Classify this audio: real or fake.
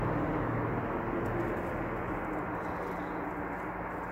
real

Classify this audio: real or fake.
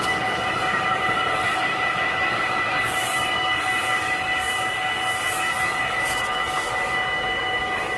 fake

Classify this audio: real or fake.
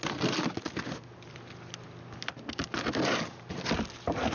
real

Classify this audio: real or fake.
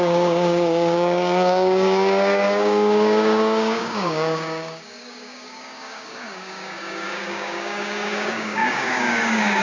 fake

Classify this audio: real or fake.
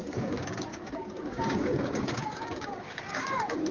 fake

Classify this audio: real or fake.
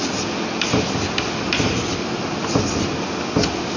real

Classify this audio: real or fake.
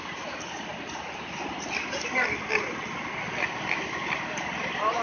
real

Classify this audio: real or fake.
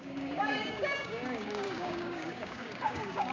fake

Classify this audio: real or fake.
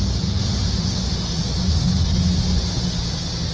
real